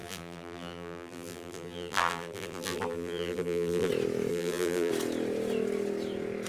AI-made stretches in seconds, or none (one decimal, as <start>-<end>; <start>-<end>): 0.0-3.9; 4.3-4.9